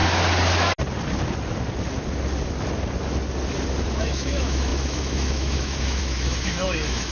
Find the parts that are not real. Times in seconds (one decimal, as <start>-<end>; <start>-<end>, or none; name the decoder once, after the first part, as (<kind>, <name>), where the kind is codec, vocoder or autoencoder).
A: 4.0-7.1 (autoencoder, DAC-VAE)